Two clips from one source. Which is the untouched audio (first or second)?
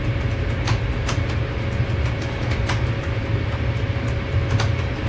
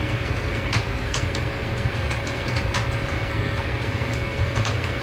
first